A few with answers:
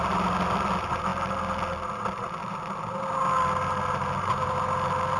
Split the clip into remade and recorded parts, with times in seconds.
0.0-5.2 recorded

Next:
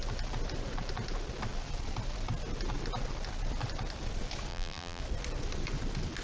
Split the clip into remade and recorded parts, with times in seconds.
0.0-4.5 recorded; 4.5-5.0 remade; 5.0-6.2 recorded

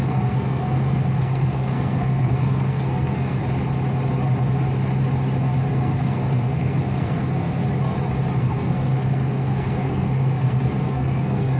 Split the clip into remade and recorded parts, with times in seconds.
0.0-3.4 remade; 3.4-5.7 recorded; 5.7-7.6 remade; 7.6-8.4 recorded; 8.4-11.6 remade

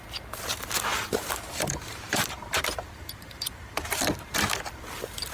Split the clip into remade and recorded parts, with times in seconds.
0.0-0.9 recorded; 0.9-4.1 remade; 4.1-5.3 recorded

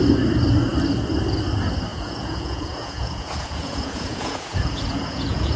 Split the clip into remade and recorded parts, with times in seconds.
0.0-1.9 recorded; 1.9-5.6 remade

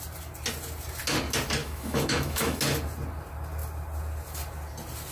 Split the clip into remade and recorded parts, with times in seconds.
0.0-1.6 recorded; 1.6-2.6 remade; 2.6-5.1 recorded

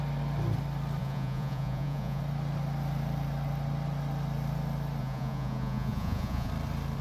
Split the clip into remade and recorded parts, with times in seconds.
0.0-1.0 recorded; 1.0-2.2 remade; 2.2-5.0 recorded; 5.0-6.5 remade; 6.5-7.0 recorded